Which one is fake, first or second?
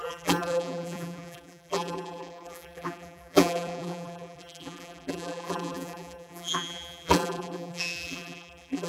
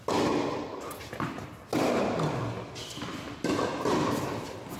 first